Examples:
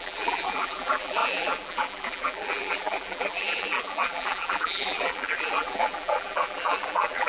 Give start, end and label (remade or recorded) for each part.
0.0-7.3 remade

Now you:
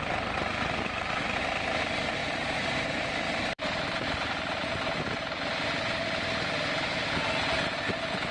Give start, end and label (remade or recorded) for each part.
0.0-2.2 recorded; 2.2-7.1 remade; 7.1-8.3 recorded

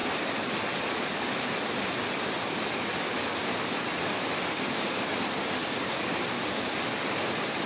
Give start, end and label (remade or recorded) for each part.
0.0-3.4 recorded; 3.4-5.0 remade; 5.0-7.7 recorded